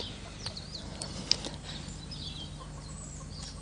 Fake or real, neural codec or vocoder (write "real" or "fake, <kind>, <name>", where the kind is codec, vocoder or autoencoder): real